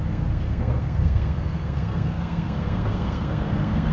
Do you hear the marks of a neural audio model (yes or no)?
yes